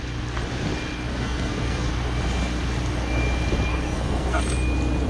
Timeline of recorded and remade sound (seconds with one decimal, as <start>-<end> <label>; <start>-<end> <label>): 0.0-1.1 recorded; 1.1-1.9 remade; 1.9-3.7 recorded; 3.7-4.4 remade; 4.4-5.1 recorded